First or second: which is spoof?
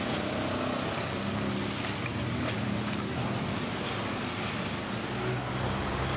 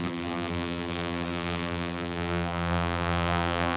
second